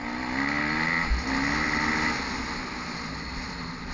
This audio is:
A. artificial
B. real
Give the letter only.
B